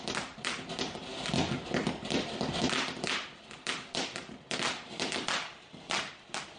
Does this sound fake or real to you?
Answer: real